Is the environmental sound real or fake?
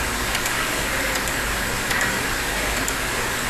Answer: fake